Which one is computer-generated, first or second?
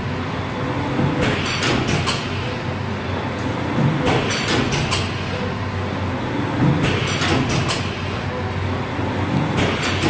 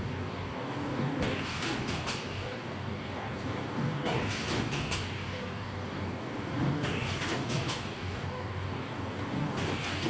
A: second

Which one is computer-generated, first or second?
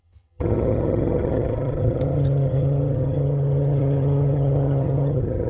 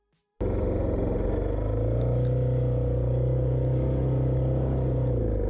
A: first